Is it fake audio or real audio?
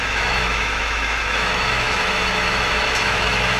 fake